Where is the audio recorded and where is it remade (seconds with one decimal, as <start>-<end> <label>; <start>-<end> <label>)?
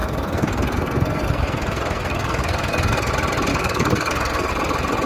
0.0-3.1 remade; 3.1-3.5 recorded; 3.5-4.5 remade; 4.5-5.1 recorded